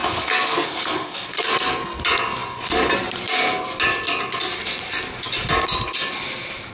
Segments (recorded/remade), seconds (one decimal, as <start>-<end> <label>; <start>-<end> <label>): 0.0-2.0 remade; 2.0-6.7 recorded